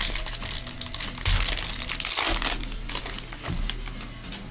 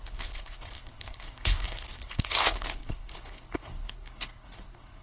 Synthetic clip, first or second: second